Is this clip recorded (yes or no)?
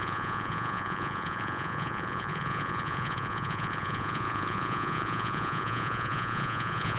no